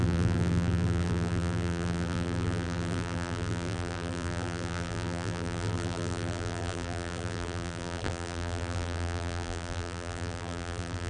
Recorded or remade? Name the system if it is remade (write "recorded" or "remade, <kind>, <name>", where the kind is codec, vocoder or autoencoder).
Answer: remade, vocoder, BigVGAN v2